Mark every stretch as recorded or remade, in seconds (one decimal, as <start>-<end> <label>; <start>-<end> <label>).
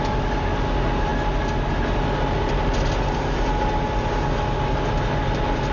0.0-5.7 recorded